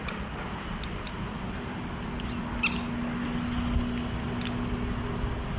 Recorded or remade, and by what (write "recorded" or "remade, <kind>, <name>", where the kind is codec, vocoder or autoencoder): recorded